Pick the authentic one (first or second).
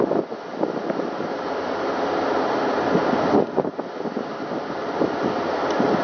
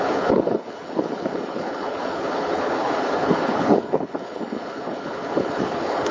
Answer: first